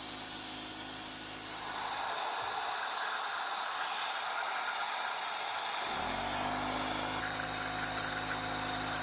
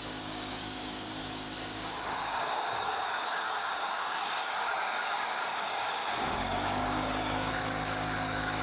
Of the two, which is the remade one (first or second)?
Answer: second